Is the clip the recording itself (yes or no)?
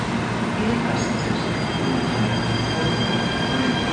yes